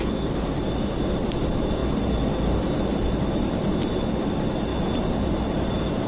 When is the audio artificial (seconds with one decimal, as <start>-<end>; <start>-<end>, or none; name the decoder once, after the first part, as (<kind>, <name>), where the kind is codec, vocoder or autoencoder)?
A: none